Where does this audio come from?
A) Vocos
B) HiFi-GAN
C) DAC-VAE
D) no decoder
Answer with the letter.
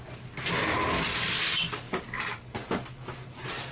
D